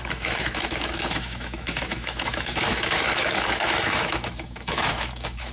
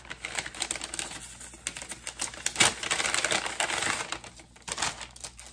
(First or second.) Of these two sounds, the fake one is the first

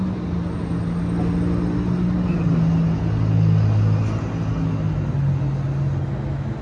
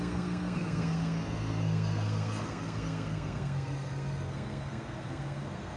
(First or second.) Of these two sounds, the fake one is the second